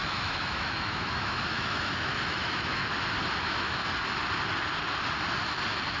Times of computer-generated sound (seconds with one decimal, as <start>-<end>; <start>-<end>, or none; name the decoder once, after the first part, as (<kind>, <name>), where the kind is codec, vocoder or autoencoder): 0.0-2.8 (autoencoder, DAC-VAE); 3.4-3.8